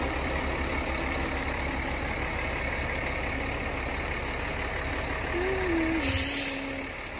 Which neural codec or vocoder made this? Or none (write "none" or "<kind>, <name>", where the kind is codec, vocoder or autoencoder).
none